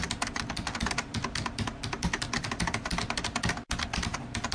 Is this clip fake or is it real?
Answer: real